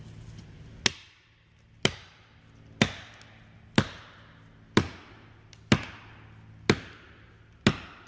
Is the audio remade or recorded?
recorded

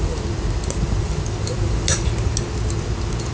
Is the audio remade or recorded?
recorded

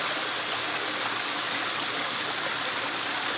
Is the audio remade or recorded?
recorded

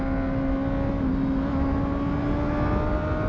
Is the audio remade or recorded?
recorded